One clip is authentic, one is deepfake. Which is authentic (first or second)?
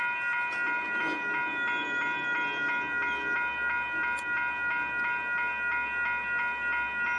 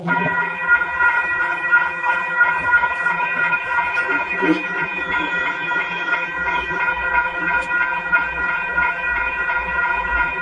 first